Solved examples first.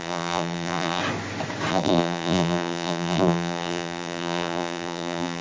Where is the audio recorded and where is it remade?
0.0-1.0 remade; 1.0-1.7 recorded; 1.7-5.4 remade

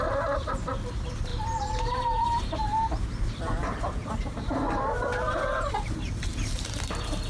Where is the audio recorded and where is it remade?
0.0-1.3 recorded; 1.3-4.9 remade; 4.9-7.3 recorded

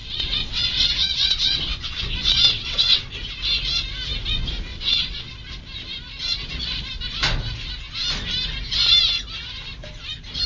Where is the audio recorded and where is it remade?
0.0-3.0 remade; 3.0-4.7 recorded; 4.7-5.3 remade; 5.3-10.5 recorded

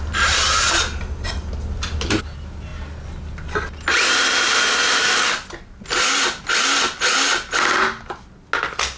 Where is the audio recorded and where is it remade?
0.0-9.0 recorded

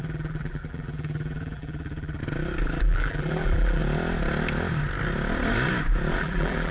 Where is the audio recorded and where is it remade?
0.0-2.2 remade; 2.2-2.8 recorded; 2.8-3.8 remade; 3.8-6.2 recorded; 6.2-6.7 remade